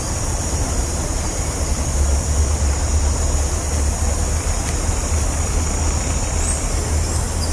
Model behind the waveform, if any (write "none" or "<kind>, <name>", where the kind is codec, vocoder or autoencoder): none